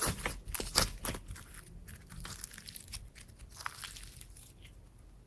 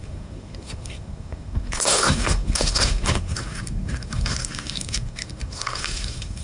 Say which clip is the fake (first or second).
second